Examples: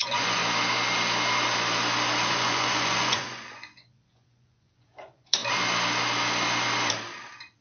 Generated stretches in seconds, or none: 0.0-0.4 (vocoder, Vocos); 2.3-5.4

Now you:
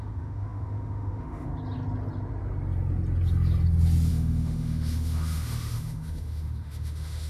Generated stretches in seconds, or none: 0.0-1.5 (autoencoder, DAC-VAE); 4.1-7.3

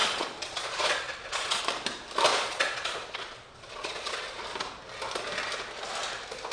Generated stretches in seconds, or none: 0.0-1.6 (vocoder, Vocos); 2.3-4.4

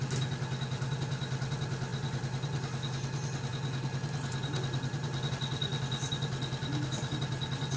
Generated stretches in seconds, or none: none

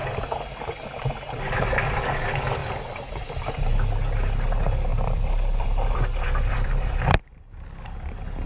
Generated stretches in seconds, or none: 4.9-7.5 (vocoder, BigVGAN v2)